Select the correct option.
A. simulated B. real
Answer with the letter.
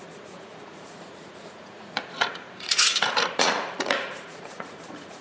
A